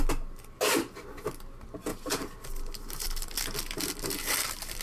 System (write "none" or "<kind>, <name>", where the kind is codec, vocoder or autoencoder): none